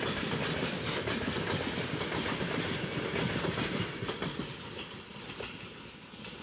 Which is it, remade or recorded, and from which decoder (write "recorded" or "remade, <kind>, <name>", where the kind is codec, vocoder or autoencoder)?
recorded